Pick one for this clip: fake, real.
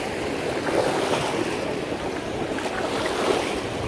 real